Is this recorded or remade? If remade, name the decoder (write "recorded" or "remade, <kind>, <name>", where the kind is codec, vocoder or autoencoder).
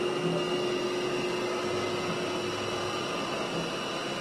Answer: recorded